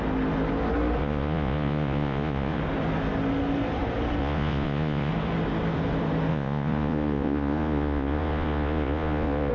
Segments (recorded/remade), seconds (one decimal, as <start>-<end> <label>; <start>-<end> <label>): 0.0-1.0 recorded; 1.0-2.6 remade; 2.6-4.2 recorded; 4.2-5.1 remade; 5.1-6.3 recorded; 6.3-9.5 remade